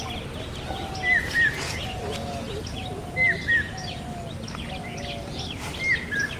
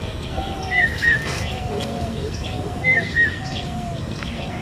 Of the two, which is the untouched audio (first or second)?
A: first